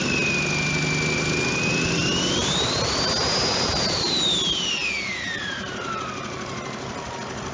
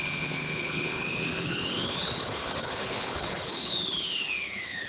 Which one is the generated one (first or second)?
second